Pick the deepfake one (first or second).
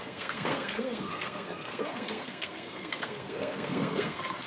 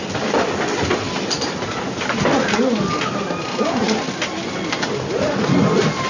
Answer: first